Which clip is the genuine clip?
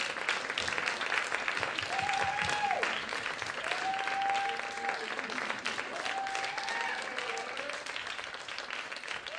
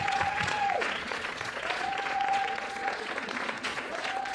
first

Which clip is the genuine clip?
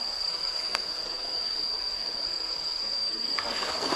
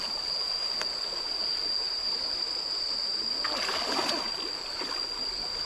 second